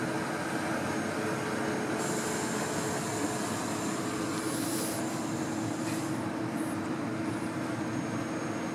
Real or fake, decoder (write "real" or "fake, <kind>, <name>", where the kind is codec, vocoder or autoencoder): real